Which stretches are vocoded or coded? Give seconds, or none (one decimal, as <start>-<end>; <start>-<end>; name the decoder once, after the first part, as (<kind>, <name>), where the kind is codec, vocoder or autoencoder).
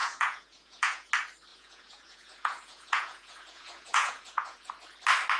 0.0-1.1 (vocoder, Vocos); 1.5-4.7